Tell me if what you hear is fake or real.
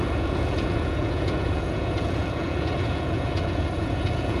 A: fake